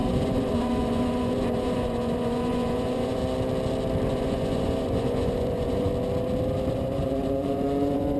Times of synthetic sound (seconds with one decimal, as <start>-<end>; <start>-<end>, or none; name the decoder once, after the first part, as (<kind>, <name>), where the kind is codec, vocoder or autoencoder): 0.0-3.2 (vocoder, Vocos); 4.1-5.9; 6.7-8.2

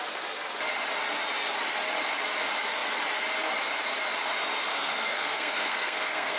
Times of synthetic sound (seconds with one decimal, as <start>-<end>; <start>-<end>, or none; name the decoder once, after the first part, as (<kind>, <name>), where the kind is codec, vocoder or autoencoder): 4.7-6.4 (codec, SNAC)

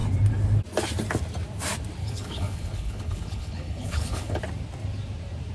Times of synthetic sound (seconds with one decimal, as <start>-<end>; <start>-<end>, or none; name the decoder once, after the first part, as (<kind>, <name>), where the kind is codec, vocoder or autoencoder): 2.0-4.4 (codec, HILCodec)

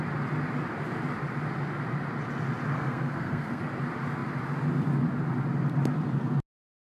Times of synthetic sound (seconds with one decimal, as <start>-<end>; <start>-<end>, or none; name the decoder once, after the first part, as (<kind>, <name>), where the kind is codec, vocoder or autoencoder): 2.7-3.6 (codec, SNAC)

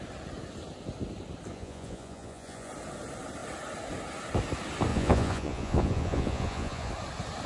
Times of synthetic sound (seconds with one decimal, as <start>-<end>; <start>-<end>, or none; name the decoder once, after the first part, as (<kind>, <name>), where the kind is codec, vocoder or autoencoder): 1.5-2.7 (vocoder, Vocos); 4.9-6.9

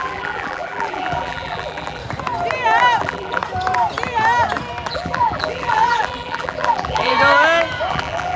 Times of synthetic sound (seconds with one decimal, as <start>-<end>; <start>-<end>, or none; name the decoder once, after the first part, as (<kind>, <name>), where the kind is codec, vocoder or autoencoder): 0.0-2.0 (vocoder, BigVGAN v2); 3.0-3.4; 4.9-7.1; 7.9-8.4

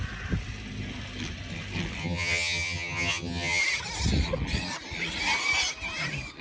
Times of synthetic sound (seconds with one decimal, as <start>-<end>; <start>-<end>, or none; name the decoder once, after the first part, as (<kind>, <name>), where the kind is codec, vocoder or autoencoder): 2.0-3.6 (vocoder, HiFi-GAN)

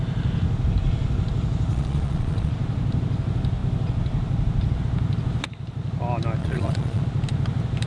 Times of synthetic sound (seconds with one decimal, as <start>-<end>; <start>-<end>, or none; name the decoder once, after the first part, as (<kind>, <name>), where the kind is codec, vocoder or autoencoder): 1.7-2.5 (vocoder, Vocos); 6.4-7.0